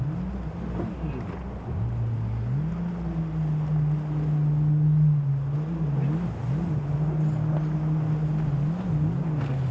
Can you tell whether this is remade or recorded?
recorded